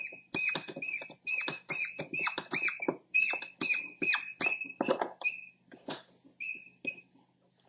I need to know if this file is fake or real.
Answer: real